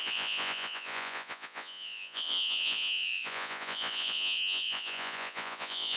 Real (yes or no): no